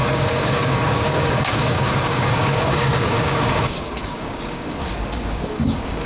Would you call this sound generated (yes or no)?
yes